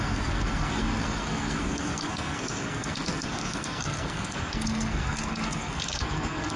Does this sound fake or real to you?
fake